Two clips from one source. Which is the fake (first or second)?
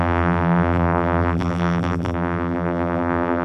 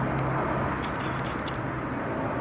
first